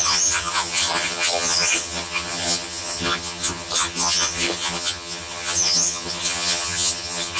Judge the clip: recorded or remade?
remade